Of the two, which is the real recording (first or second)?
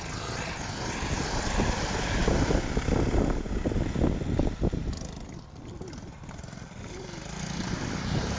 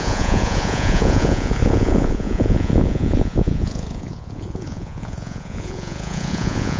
first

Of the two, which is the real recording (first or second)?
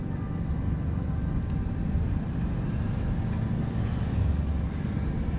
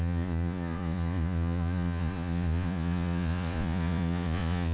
first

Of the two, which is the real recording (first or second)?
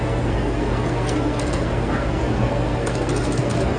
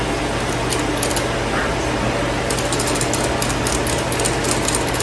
second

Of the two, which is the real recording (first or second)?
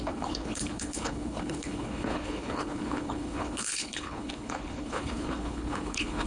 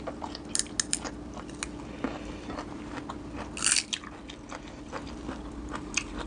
second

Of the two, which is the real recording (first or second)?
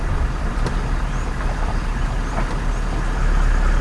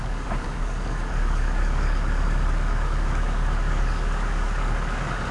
first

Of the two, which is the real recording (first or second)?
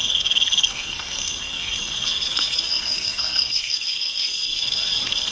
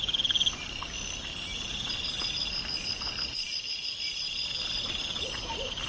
second